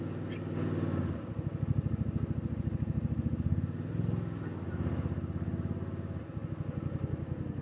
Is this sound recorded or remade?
recorded